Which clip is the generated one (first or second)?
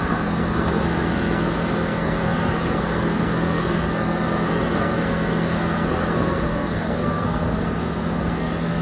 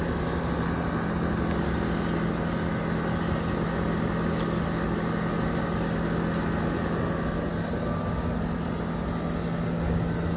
first